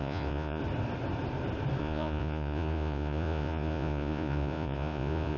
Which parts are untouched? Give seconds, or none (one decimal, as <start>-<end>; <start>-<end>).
0.6-1.8